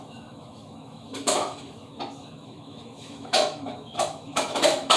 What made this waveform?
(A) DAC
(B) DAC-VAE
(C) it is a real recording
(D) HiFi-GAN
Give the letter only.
B